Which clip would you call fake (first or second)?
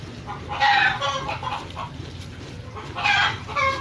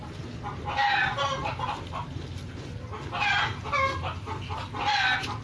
first